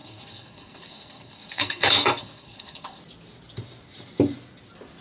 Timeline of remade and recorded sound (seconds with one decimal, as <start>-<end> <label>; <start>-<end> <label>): 0.0-3.0 remade; 3.0-5.0 recorded